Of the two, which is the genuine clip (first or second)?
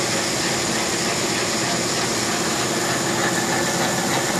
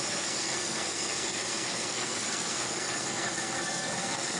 first